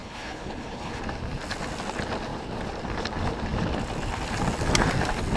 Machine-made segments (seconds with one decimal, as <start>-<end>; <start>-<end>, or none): 0.0-1.0